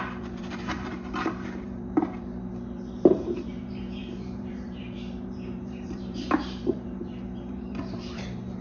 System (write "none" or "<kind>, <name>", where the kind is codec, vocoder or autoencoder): vocoder, BigVGAN v2